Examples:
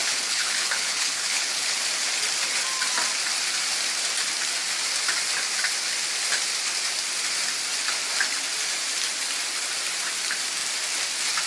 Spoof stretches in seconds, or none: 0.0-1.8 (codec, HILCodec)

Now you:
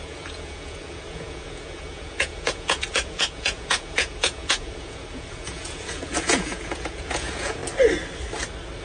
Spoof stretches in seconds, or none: 0.0-7.6 (vocoder, Vocos)

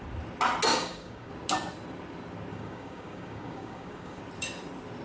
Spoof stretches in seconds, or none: 0.7-1.3 (codec, DAC); 2.5-4.2